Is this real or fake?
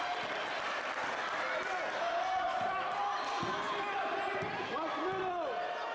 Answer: real